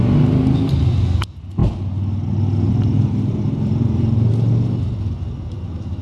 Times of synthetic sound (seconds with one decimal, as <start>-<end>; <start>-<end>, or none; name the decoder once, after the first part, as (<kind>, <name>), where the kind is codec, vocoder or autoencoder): 3.3-4.3 (vocoder, BigVGAN v2)